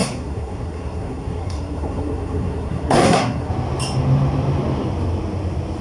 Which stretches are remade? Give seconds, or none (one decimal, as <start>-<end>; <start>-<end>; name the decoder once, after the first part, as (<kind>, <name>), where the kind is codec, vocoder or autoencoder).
0.0-3.5 (codec, SNAC)